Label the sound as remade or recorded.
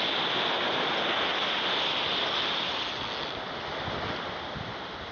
recorded